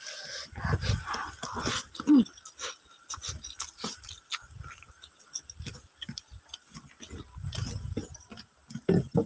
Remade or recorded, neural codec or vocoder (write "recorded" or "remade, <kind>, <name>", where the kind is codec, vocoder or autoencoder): recorded